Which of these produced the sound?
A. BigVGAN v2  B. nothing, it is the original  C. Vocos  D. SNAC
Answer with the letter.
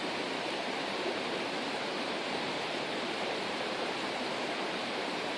A